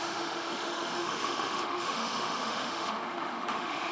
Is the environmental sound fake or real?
fake